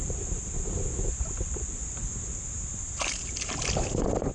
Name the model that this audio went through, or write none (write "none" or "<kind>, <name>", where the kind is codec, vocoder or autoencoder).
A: none